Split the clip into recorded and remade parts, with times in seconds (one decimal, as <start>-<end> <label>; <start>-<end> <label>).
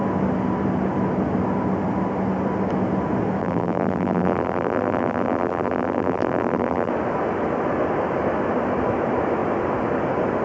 0.0-3.4 recorded; 3.4-6.9 remade; 6.9-10.4 recorded